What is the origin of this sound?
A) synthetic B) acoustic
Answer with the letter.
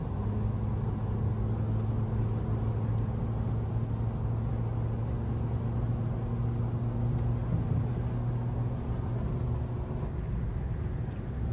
B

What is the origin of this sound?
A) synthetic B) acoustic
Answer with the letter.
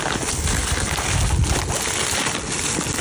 B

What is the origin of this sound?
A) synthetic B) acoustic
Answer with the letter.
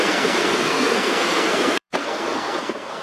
A